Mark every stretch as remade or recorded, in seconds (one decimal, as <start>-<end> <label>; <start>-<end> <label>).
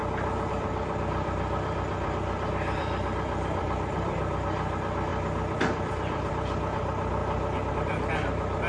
0.0-0.5 recorded; 0.5-7.2 remade; 7.2-7.7 recorded; 7.7-8.7 remade